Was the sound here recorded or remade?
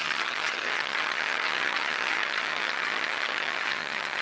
remade